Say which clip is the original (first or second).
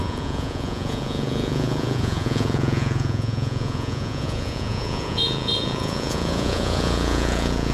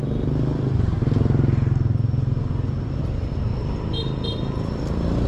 second